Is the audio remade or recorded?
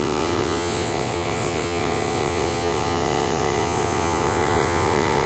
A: remade